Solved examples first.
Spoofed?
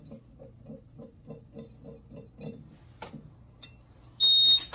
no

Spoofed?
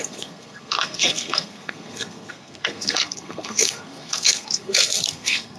yes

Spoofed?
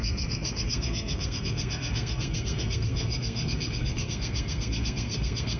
yes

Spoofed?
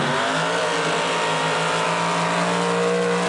no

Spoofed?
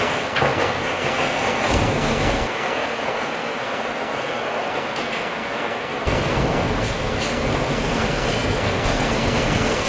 yes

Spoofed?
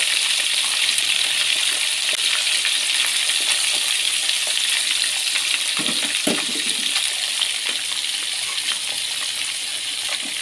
no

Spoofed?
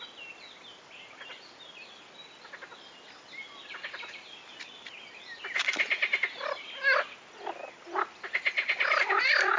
no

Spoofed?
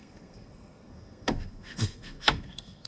yes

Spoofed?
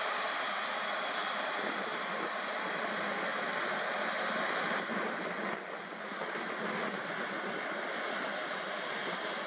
no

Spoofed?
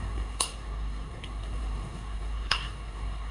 yes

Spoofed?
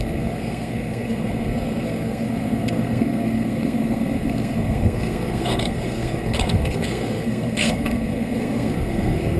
yes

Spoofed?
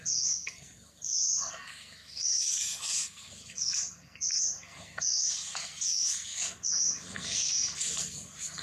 yes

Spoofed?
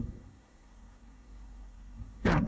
yes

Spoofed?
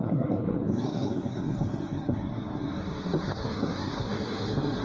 yes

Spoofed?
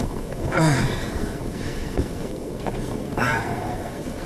yes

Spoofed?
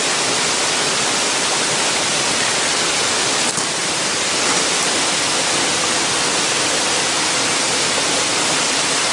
no